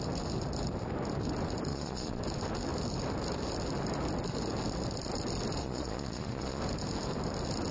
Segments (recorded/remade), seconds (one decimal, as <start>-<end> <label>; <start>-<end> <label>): 0.0-1.7 recorded; 1.7-2.2 remade; 2.2-5.6 recorded; 5.6-6.6 remade; 6.6-7.7 recorded